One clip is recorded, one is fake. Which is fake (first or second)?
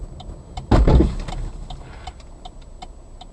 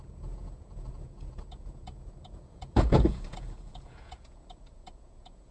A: second